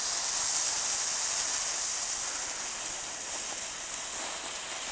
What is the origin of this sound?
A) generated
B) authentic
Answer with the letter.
B